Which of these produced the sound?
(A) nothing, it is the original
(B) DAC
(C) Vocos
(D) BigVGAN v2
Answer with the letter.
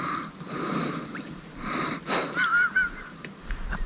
D